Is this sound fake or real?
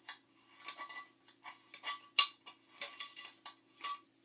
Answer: real